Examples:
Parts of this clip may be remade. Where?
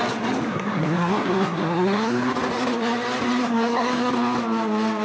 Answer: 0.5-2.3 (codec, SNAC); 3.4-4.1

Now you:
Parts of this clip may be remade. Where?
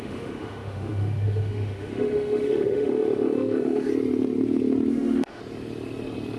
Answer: 0.0-3.9 (autoencoder, DAC-VAE); 4.9-5.4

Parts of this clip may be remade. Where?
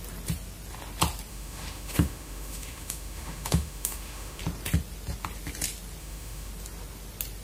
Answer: 1.3-4.4 (autoencoder, DAC-VAE); 6.0-6.5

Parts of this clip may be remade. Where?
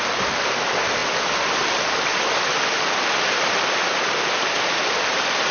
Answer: none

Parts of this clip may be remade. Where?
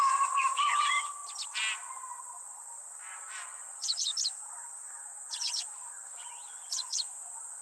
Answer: 0.0-1.2 (vocoder, Vocos); 2.9-4.1; 5.3-7.6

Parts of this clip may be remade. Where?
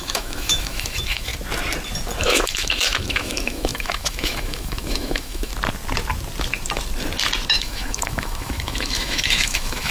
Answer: 0.0-1.3 (autoencoder, DAC-VAE); 2.2-5.5; 7.5-9.9